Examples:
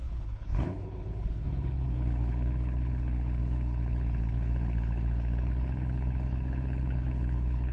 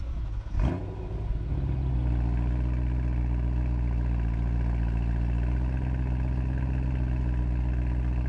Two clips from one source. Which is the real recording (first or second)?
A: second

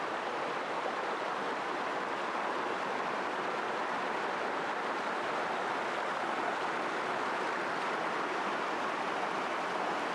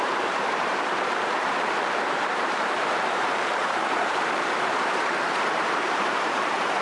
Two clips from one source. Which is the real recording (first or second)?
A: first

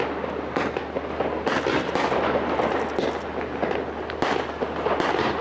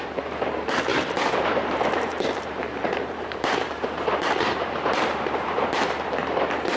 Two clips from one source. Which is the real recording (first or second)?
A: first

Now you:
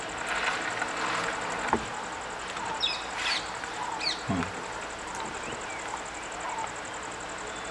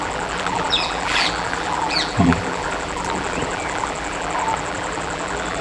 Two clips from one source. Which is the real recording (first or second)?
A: first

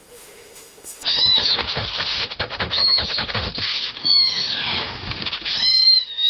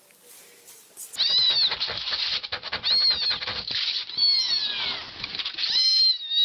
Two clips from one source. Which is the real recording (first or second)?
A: second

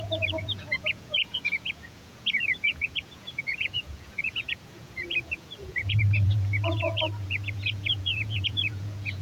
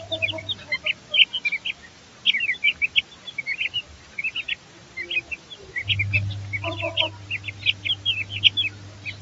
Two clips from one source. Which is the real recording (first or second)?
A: second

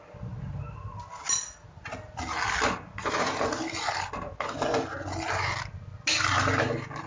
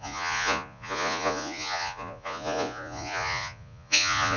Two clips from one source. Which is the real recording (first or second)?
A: first